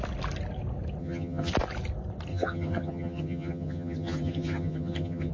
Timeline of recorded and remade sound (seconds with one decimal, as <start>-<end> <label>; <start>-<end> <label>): 0.0-1.0 recorded; 1.0-1.5 remade; 1.5-2.3 recorded; 2.3-5.3 remade